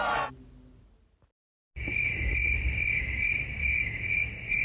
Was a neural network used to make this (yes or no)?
no